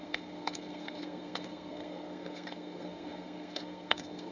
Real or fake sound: fake